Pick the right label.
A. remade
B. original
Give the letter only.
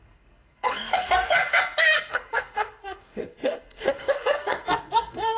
A